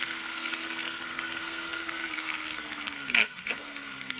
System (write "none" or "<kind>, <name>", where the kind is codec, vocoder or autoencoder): codec, SNAC